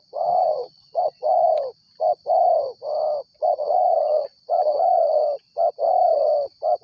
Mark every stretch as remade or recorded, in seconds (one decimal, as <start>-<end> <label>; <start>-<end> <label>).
0.0-1.3 remade; 1.3-3.3 recorded; 3.3-5.2 remade; 5.2-6.8 recorded

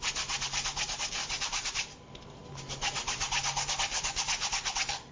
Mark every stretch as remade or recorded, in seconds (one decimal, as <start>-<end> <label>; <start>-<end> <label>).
0.0-1.2 recorded; 1.2-2.0 remade; 2.0-5.1 recorded

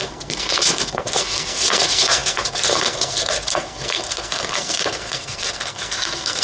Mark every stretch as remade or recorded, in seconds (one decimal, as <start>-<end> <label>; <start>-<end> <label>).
0.0-6.4 remade

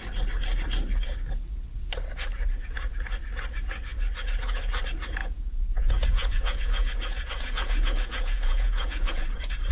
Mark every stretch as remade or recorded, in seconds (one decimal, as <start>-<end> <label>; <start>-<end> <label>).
0.0-5.2 recorded; 5.2-9.7 remade

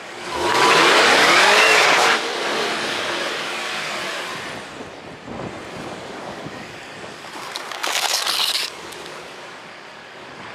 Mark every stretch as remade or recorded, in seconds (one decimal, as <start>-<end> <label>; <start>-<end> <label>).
0.0-4.3 remade; 4.3-5.7 recorded; 5.7-10.5 remade

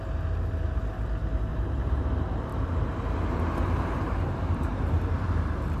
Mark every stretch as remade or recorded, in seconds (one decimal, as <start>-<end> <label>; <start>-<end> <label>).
0.0-1.5 recorded; 1.5-2.0 remade; 2.0-2.5 recorded; 2.5-4.8 remade; 4.8-5.8 recorded

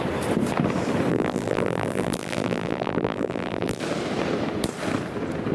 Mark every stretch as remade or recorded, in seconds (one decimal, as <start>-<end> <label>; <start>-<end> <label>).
0.0-1.1 recorded; 1.1-3.8 remade; 3.8-5.5 recorded